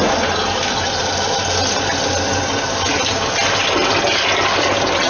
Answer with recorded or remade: recorded